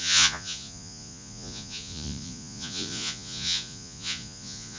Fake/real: fake